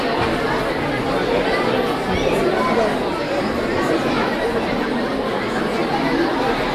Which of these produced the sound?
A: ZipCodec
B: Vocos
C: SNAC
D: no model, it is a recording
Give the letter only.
D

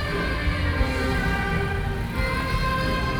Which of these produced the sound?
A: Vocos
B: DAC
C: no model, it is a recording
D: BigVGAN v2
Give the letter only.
C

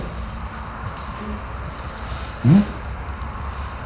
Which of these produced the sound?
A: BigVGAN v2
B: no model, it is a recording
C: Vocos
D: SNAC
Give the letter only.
B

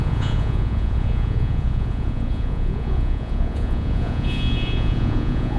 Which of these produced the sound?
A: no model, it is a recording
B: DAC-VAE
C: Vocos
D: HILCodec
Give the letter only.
C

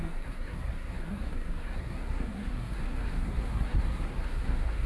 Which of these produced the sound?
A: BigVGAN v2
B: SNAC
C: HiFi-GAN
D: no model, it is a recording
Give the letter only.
B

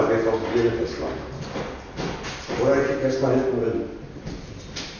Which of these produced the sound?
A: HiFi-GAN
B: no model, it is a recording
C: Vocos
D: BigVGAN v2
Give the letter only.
B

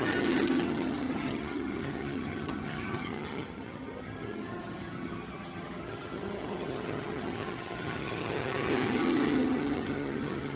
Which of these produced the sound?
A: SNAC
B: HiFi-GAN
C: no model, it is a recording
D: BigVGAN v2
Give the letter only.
B